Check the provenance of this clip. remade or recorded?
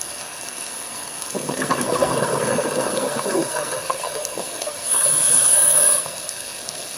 remade